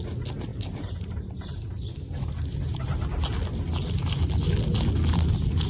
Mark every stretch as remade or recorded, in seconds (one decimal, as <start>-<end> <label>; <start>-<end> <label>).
0.0-0.5 recorded; 0.5-2.3 remade; 2.3-5.7 recorded